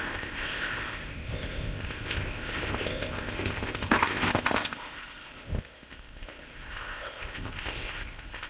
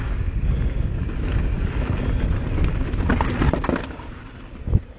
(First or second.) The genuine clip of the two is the second